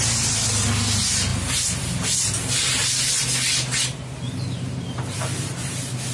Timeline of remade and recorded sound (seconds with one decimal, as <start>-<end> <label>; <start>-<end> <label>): 0.0-6.1 recorded